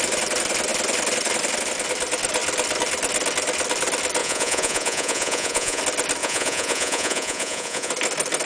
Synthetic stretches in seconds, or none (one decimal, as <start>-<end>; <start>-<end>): 4.2-5.8; 6.2-7.9